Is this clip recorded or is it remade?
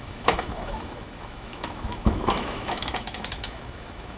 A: remade